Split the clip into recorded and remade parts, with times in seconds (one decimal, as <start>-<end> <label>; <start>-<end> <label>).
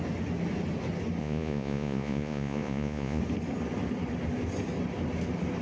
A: 0.0-1.2 recorded; 1.2-3.2 remade; 3.2-5.6 recorded